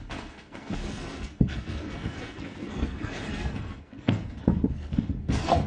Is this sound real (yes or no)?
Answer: no